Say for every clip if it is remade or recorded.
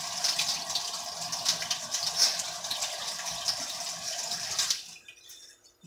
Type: recorded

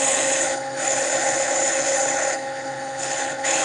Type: remade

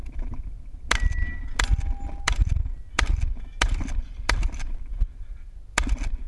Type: recorded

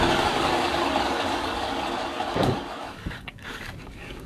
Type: remade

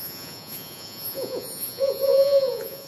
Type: remade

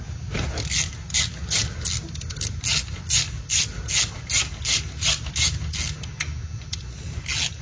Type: recorded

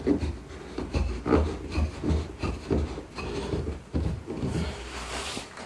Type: remade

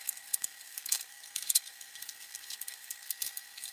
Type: remade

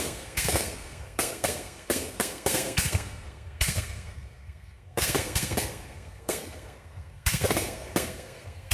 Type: remade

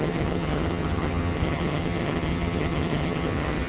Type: remade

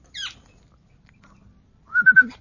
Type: recorded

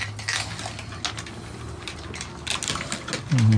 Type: recorded